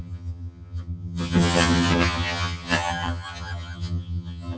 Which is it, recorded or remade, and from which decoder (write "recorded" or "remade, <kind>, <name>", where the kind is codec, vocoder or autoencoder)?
remade, vocoder, HiFi-GAN